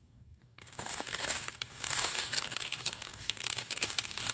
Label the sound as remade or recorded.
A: remade